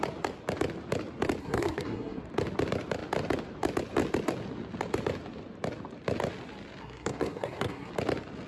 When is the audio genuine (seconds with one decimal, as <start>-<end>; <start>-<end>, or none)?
0.0-1.4; 2.2-6.8; 7.9-8.5